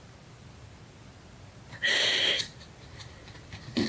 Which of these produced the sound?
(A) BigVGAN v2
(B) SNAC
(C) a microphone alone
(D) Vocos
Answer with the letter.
C